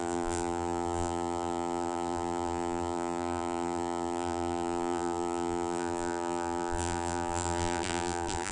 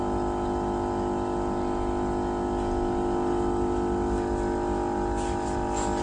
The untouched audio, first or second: second